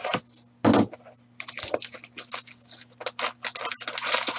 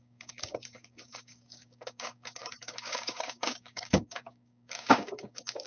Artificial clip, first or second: second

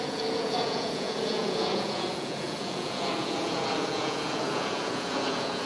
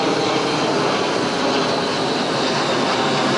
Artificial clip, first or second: first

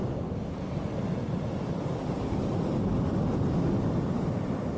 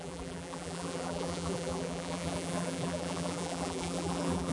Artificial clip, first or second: second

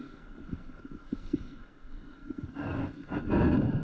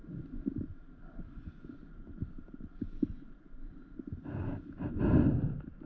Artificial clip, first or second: first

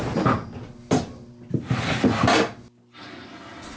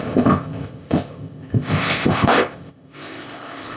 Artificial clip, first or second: second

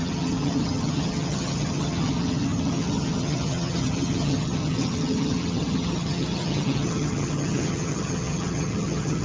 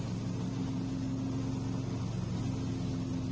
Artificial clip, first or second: first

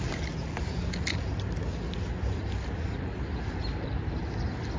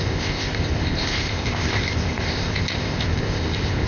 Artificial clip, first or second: second